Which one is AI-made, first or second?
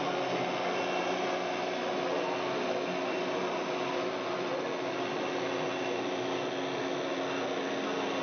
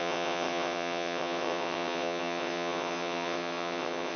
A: second